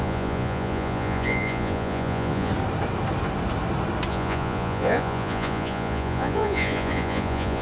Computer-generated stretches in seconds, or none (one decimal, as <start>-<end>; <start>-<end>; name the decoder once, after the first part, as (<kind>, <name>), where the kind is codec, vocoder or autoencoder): 0.0-2.5 (vocoder, Vocos); 4.1-7.6